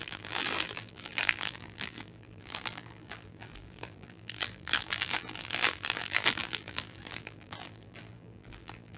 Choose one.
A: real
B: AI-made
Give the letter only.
B